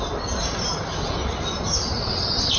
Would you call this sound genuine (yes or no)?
yes